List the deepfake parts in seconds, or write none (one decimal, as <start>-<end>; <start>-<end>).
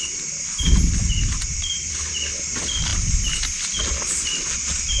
1.5-2.1